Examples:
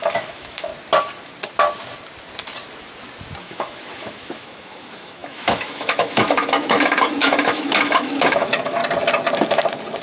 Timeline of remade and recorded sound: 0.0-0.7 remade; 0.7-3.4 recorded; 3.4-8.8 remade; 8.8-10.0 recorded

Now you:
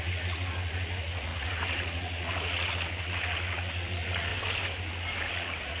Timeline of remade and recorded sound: 0.0-4.3 remade; 4.3-5.3 recorded; 5.3-5.8 remade

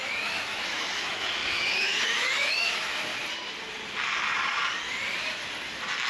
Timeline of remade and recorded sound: 0.0-3.1 remade; 3.1-6.1 recorded